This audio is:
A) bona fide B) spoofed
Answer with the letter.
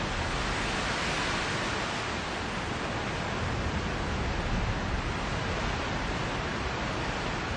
A